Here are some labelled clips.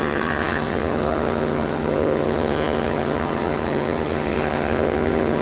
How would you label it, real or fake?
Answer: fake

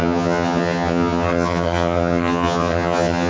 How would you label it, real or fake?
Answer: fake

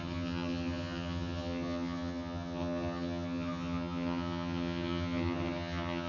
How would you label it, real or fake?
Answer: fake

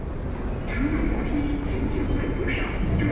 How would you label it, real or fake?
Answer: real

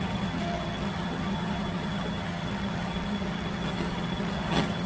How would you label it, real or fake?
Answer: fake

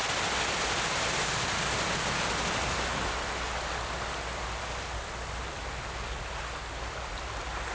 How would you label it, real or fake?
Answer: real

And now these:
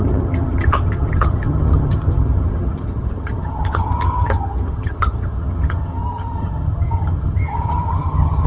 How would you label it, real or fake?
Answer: fake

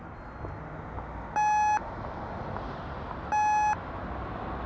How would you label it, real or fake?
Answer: real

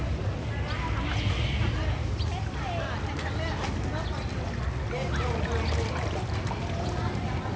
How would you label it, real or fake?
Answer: real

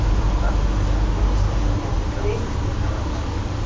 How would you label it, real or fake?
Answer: real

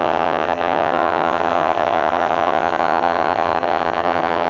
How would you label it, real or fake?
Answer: fake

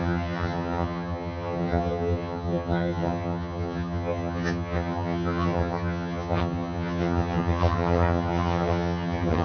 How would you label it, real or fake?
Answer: fake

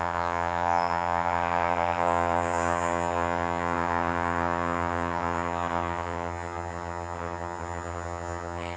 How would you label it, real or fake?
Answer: fake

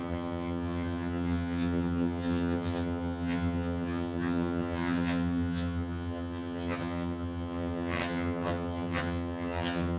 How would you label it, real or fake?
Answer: fake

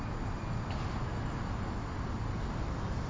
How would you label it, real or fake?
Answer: real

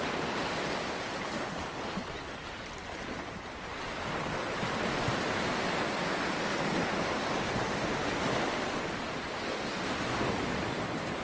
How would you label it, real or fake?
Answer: real